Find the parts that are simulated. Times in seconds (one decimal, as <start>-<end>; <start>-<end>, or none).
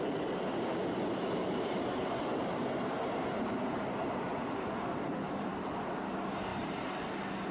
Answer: 1.4-5.6